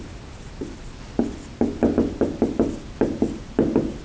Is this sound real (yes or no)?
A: yes